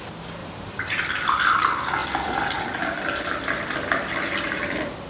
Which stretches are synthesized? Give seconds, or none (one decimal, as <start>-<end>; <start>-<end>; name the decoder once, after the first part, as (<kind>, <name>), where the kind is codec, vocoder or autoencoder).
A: 0.4-1.1 (vocoder, BigVGAN v2)